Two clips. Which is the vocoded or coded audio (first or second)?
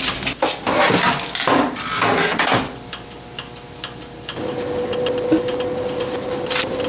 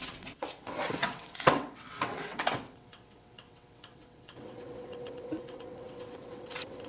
second